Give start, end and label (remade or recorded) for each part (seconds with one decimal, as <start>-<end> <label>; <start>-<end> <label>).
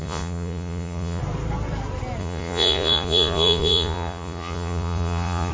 0.0-1.2 remade; 1.2-2.2 recorded; 2.2-5.5 remade